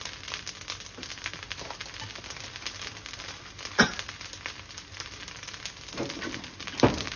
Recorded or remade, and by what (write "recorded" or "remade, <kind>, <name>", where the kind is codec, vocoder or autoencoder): recorded